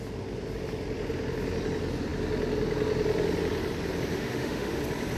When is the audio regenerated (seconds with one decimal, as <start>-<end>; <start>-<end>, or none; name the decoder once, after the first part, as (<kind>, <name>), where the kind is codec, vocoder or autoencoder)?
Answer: 4.1-4.8 (autoencoder, DAC-VAE)